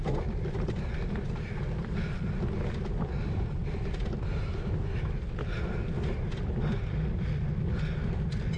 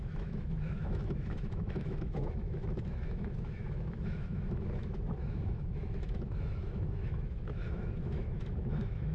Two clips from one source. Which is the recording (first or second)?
first